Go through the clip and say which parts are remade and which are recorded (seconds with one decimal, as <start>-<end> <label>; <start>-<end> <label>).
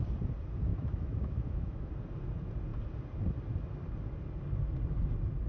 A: 0.0-0.7 recorded; 0.7-1.9 remade; 1.9-5.5 recorded